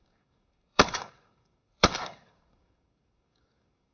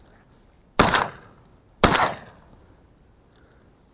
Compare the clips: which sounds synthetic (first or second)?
first